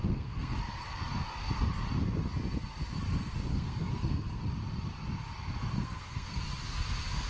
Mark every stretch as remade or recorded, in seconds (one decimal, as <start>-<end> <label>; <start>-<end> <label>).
0.0-0.6 remade; 0.6-3.5 recorded; 3.5-4.4 remade; 4.4-5.7 recorded; 5.7-6.4 remade; 6.4-7.3 recorded